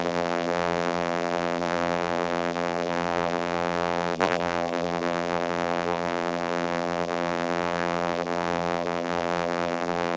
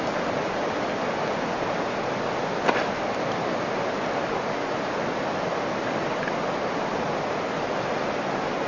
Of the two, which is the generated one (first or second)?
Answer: first